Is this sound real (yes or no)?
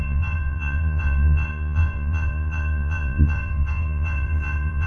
no